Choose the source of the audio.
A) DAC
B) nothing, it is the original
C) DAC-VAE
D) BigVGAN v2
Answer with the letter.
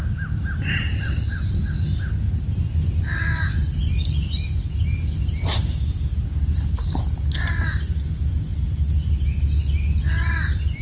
B